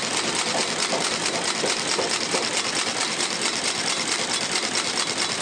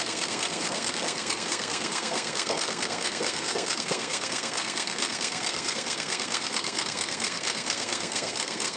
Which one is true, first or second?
first